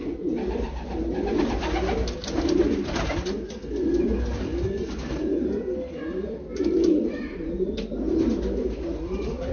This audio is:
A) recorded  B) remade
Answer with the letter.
A